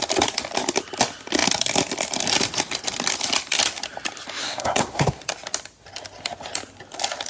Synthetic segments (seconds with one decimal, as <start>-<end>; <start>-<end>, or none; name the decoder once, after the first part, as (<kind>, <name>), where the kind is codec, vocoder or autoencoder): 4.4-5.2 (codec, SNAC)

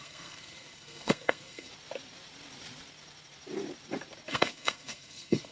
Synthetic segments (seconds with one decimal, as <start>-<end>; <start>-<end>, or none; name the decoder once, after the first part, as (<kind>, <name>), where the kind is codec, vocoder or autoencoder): 0.0-1.7 (codec, SNAC); 4.3-5.5

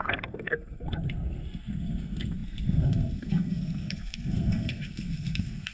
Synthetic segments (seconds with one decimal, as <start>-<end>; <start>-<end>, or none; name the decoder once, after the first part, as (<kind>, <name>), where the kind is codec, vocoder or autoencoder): 0.0-5.7 (codec, SNAC)